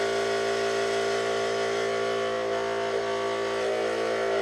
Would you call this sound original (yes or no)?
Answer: yes